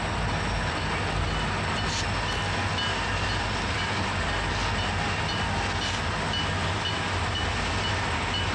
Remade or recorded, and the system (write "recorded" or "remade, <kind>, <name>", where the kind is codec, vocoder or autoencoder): recorded